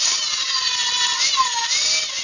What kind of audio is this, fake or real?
real